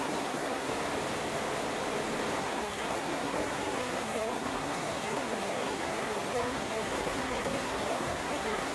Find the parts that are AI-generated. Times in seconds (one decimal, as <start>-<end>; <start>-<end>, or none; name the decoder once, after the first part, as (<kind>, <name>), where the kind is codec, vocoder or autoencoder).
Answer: 0.0-0.7 (codec, SNAC); 2.4-8.7